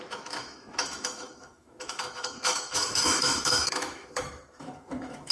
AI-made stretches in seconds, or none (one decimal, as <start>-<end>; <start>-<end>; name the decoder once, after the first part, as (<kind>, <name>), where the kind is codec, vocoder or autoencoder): 0.0-5.3 (autoencoder, DAC-VAE)

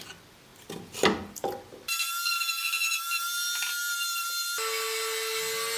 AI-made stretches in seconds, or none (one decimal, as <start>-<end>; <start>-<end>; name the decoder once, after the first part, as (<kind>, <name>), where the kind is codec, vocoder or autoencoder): none

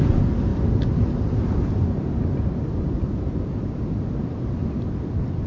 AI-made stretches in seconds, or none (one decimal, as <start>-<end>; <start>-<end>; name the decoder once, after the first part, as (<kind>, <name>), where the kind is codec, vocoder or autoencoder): none